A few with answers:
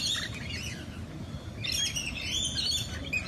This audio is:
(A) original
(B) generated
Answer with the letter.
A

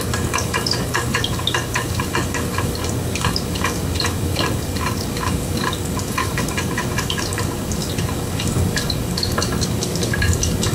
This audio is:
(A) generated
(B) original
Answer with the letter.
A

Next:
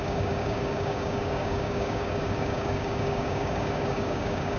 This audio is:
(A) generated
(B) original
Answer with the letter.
A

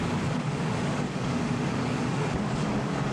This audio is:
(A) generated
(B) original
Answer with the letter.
A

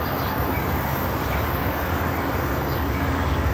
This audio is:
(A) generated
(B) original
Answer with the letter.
A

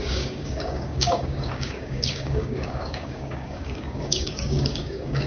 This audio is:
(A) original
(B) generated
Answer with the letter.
B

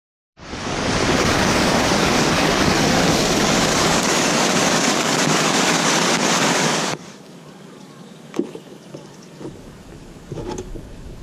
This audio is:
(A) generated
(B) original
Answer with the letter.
A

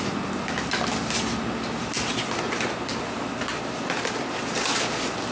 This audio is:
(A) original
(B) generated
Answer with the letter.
A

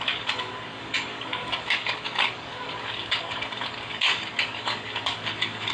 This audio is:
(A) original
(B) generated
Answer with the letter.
B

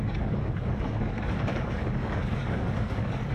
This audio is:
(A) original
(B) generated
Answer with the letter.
B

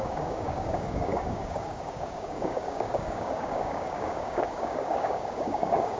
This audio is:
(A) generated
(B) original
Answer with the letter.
A